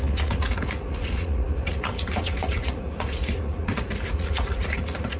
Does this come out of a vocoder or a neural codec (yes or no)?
yes